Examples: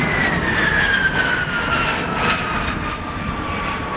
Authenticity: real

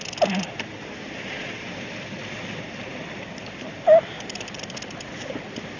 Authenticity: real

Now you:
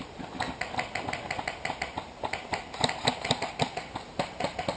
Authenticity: real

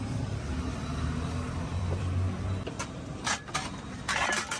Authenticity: fake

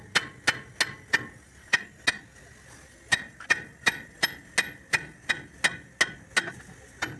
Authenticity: real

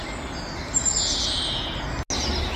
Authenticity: real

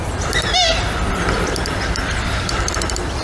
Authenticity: fake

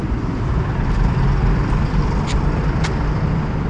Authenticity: fake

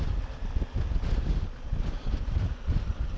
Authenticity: real